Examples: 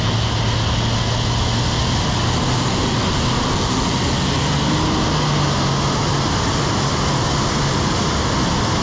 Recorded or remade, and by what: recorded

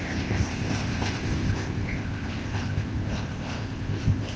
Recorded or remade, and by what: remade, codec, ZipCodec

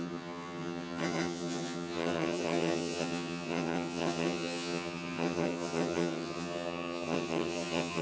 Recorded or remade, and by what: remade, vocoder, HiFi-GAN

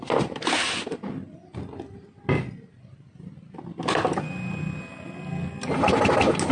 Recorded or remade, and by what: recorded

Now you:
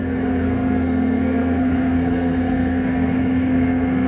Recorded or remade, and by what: remade, codec, SNAC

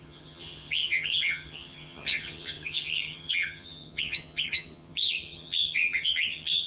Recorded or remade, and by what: remade, vocoder, HiFi-GAN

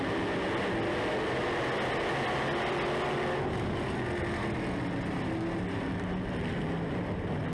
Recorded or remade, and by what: recorded